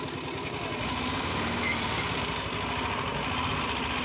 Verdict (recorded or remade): recorded